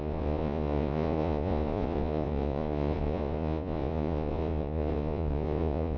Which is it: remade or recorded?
remade